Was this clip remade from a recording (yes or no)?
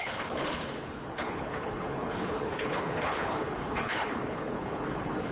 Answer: yes